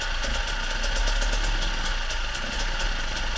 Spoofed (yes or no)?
no